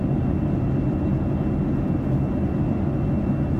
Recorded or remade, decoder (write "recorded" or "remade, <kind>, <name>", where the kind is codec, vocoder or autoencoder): recorded